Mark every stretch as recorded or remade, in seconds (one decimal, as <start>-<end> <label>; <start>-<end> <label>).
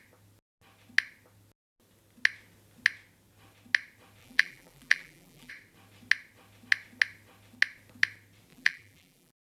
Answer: 0.0-4.2 recorded; 4.2-5.5 remade; 5.5-8.5 recorded; 8.5-9.5 remade